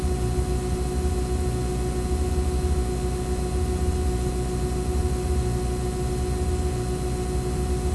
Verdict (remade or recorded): recorded